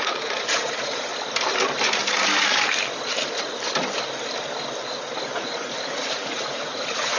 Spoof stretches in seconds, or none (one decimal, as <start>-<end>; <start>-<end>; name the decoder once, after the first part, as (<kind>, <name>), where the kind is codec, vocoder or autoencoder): 0.0-1.1 (vocoder, Vocos); 5.3-7.2